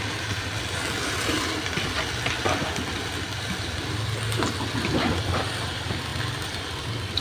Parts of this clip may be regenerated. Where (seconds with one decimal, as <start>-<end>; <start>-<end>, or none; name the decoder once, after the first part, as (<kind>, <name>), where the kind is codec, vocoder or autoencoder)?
none